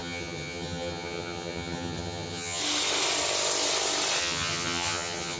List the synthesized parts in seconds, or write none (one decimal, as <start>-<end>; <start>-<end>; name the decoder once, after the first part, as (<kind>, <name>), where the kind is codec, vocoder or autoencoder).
0.0-2.6 (vocoder, HiFi-GAN); 4.2-5.4